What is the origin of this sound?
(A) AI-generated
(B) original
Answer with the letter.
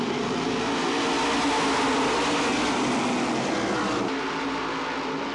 B